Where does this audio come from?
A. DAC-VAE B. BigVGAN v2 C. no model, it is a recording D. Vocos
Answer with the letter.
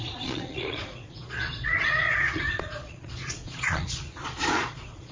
D